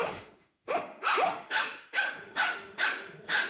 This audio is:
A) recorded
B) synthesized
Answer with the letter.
B